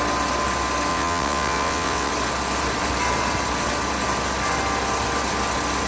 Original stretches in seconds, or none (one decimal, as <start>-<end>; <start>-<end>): 0.0-0.9; 2.1-5.9